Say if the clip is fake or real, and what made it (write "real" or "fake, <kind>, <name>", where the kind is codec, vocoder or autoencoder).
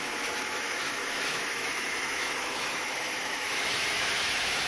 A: fake, autoencoder, DAC-VAE